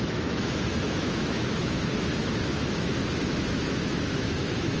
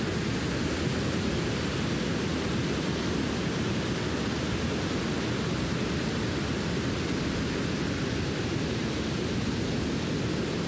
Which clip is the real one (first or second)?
second